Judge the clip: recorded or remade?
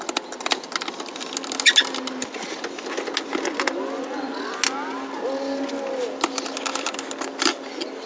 recorded